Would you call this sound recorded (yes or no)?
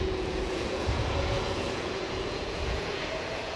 no